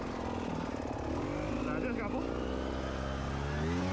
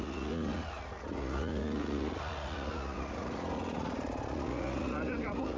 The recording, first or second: first